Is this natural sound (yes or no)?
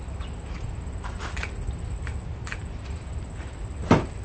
yes